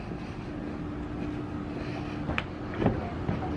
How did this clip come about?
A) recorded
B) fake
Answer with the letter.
A